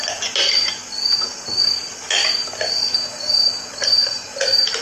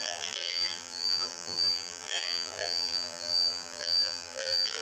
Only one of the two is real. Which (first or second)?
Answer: first